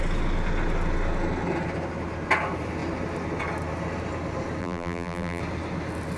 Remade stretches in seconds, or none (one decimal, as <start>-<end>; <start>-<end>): 4.6-5.4